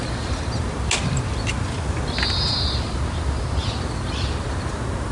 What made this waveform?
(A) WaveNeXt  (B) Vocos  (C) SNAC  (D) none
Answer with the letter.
D